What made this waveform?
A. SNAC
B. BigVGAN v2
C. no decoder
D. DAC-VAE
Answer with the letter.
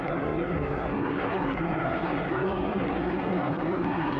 A